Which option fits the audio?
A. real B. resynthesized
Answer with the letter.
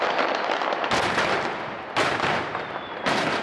A